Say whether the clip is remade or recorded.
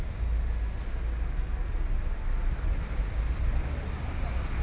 recorded